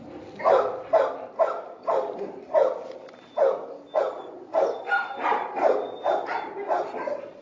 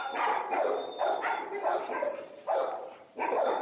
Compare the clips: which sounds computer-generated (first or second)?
second